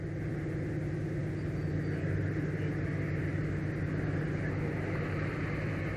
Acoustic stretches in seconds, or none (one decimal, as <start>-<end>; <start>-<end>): 0.0-6.0